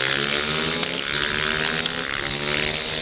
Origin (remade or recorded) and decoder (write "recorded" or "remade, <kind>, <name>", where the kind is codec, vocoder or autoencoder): recorded